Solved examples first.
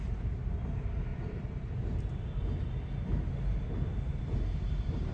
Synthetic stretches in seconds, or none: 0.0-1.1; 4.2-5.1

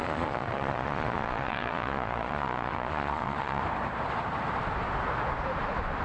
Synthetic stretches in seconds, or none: 0.0-3.6

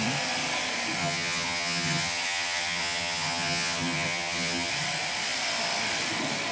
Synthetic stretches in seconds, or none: 1.0-4.7

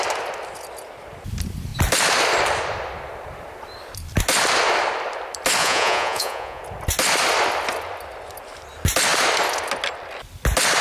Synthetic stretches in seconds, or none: 5.6-6.6

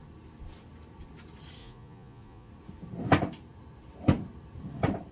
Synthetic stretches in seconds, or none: 1.6-2.5